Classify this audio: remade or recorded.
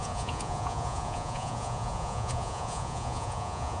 remade